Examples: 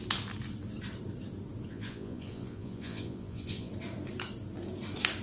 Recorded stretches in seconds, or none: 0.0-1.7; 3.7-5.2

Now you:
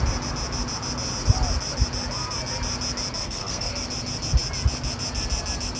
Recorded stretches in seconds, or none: 0.0-3.2; 3.7-5.8

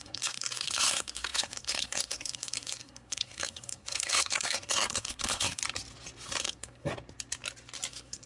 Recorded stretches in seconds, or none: 5.6-6.4; 6.9-7.9